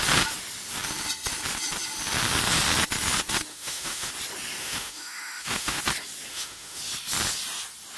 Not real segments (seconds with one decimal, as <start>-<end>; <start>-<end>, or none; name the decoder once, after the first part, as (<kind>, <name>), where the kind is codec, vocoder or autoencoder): 3.5-4.1 (autoencoder, DAC-VAE); 4.6-5.8; 6.3-6.8